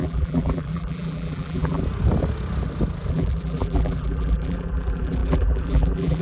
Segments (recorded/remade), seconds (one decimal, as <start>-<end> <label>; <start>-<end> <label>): 0.0-1.8 remade; 1.8-3.1 recorded; 3.1-6.2 remade